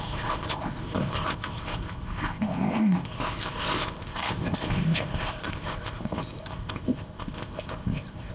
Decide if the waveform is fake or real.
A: fake